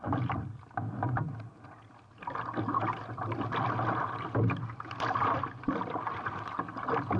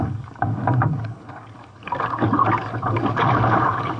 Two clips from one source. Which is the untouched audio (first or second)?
first